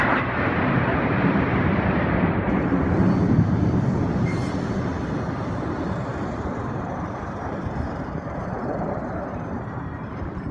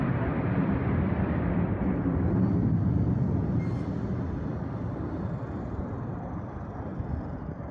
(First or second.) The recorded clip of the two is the second